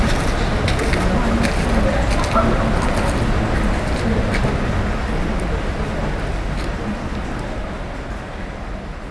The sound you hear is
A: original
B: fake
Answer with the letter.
A